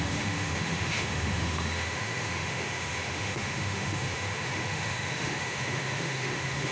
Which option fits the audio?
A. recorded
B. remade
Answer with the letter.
B